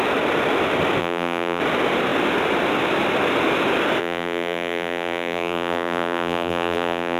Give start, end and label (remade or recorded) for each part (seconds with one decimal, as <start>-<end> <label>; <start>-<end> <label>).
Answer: 0.0-1.0 recorded; 1.0-1.6 remade; 1.6-4.0 recorded; 4.0-7.2 remade